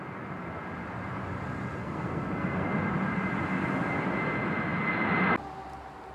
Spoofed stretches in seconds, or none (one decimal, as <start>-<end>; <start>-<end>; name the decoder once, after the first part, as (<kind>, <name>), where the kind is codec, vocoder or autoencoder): 1.8-2.7 (codec, SNAC)